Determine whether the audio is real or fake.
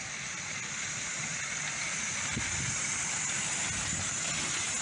real